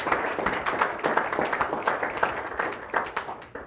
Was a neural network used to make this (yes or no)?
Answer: no